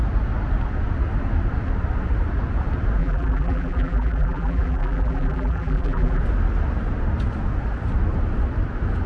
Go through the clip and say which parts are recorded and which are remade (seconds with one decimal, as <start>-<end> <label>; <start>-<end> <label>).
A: 0.0-3.0 recorded; 3.0-6.2 remade; 6.2-9.1 recorded